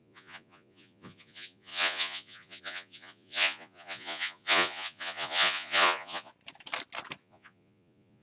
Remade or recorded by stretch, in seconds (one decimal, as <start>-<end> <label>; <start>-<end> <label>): 0.0-6.3 remade; 6.3-7.2 recorded; 7.2-8.2 remade